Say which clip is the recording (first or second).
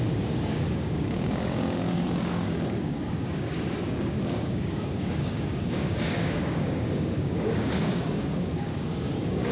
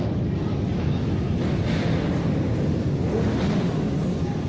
second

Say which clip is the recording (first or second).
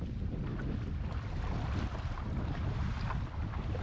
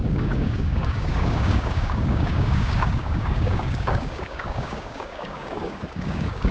first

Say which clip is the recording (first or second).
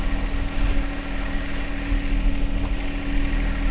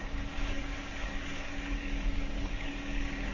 first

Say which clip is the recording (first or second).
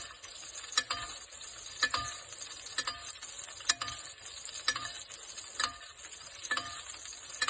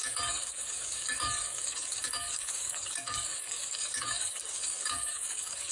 first